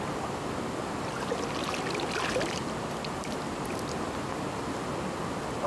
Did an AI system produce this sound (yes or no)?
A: no